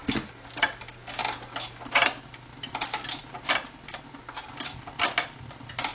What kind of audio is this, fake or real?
real